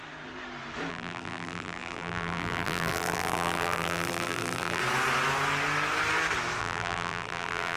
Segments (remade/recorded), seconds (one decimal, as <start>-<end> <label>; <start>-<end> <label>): 0.0-0.9 recorded; 0.9-4.8 remade; 4.8-6.6 recorded; 6.6-7.8 remade